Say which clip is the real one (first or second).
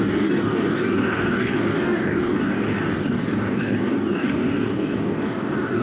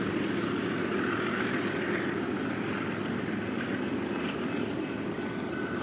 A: second